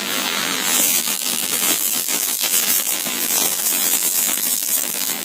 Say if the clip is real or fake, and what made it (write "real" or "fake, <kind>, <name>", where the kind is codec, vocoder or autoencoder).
fake, vocoder, BigVGAN v2